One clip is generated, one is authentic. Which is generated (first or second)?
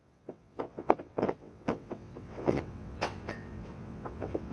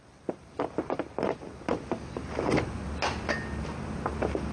first